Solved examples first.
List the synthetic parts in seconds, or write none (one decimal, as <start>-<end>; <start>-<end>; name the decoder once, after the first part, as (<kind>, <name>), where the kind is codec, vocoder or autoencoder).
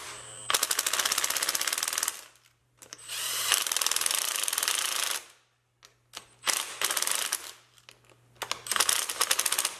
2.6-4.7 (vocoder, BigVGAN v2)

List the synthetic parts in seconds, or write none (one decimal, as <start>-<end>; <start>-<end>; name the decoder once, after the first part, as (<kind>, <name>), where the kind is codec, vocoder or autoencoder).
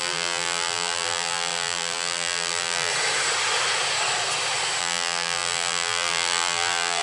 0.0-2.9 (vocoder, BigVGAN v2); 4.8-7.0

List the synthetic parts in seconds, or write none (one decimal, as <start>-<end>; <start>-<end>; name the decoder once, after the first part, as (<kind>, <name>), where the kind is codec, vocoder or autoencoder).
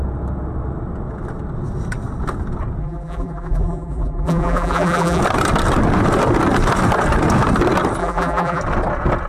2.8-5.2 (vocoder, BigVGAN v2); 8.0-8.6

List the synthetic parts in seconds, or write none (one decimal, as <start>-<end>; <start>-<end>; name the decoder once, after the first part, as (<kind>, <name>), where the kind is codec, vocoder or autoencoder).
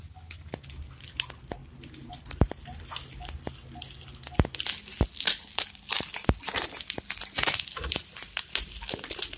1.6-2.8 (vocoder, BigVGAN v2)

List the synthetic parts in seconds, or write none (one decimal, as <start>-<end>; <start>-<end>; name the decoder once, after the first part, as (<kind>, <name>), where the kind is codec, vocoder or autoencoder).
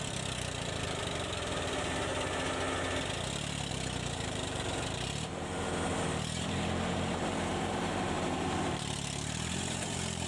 0.0-2.1 (vocoder, BigVGAN v2); 3.7-10.3